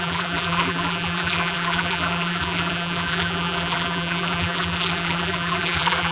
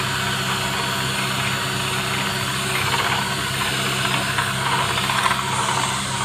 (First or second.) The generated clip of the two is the first